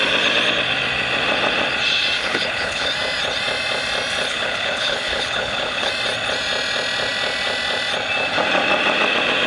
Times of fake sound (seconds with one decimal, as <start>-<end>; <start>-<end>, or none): 2.2-2.9; 4.3-5.9